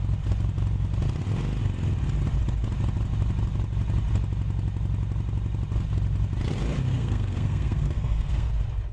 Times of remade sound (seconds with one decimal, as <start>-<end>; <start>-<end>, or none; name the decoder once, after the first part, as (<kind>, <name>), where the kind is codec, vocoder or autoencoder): 6.9-8.5 (codec, SNAC)